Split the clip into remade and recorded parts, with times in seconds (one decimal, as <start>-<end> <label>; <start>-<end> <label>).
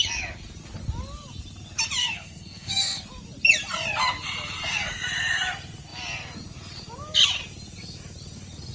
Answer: 0.0-2.0 recorded; 2.0-3.0 remade; 3.0-8.7 recorded